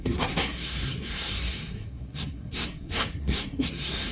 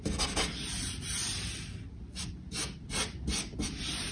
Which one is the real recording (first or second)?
second